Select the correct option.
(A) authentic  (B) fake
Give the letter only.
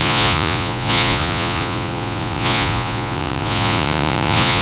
B